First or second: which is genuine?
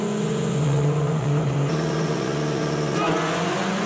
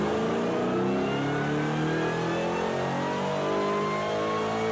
second